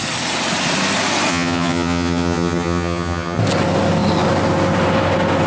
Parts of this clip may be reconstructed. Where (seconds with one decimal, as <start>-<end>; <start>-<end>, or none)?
1.3-3.4